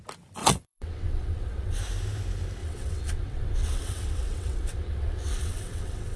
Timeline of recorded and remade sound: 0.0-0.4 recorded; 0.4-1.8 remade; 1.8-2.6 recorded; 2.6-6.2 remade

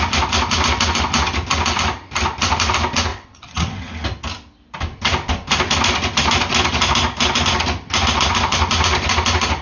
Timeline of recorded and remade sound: 0.0-3.1 recorded; 3.1-3.9 remade; 3.9-9.6 recorded

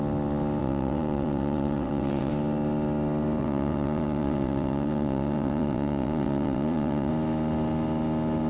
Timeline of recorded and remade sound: 0.0-0.6 recorded; 0.6-2.3 remade; 2.3-3.4 recorded; 3.4-7.1 remade; 7.1-8.5 recorded

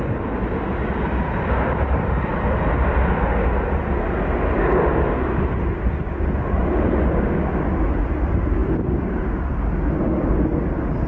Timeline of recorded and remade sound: 0.0-11.1 recorded

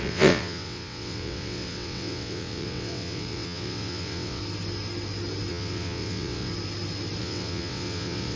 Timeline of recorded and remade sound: 0.0-4.4 remade; 4.4-5.5 recorded; 5.5-6.5 remade; 6.5-7.2 recorded; 7.2-8.4 remade

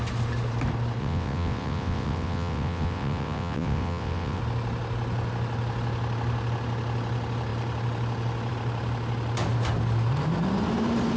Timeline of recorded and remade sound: 0.0-1.0 recorded; 1.0-4.4 remade; 4.4-11.2 recorded

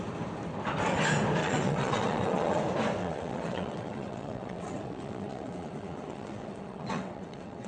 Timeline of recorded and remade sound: 0.0-1.4 recorded; 1.4-2.6 remade; 2.6-3.0 recorded; 3.0-7.7 remade